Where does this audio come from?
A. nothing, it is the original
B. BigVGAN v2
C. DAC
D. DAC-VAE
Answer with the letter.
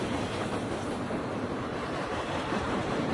B